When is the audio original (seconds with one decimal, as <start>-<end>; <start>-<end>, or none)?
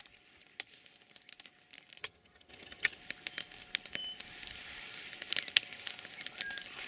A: 0.0-2.0; 3.0-6.9